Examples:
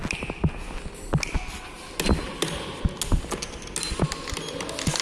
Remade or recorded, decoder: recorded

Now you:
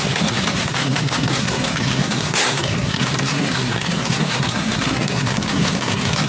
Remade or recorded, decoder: remade, codec, SNAC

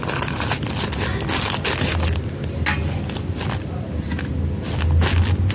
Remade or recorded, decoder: recorded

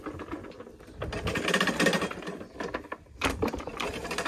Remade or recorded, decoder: recorded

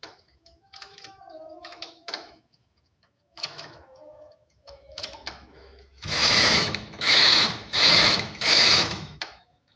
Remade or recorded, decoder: remade, autoencoder, DAC-VAE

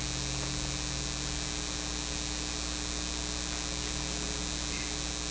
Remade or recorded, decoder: recorded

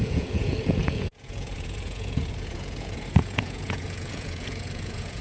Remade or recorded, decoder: remade, vocoder, Vocos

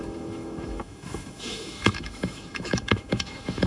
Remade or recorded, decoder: remade, autoencoder, DAC-VAE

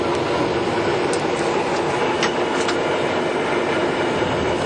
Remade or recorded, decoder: recorded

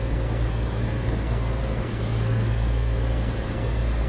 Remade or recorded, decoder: remade, codec, SNAC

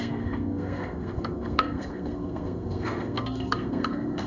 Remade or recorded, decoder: remade, codec, SNAC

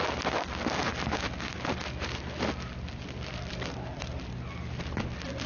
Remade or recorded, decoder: recorded